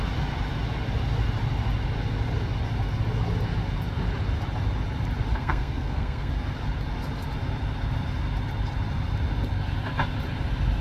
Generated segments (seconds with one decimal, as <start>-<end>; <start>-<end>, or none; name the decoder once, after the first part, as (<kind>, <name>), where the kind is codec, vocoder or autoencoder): 5.3-6.3 (codec, SNAC)